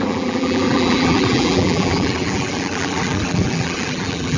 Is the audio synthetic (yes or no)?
yes